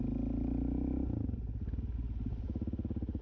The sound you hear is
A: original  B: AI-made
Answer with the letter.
A